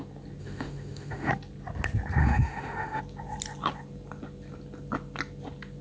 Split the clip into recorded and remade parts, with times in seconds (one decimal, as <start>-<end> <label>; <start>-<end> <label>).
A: 0.0-0.4 recorded; 0.4-1.3 remade; 1.3-2.2 recorded; 2.2-3.0 remade; 3.0-5.8 recorded